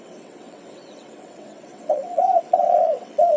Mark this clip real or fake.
fake